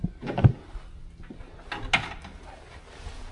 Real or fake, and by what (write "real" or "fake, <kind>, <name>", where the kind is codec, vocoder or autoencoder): real